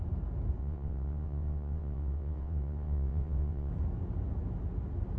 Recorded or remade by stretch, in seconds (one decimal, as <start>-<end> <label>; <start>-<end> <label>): 0.0-0.6 recorded; 0.6-3.7 remade; 3.7-5.2 recorded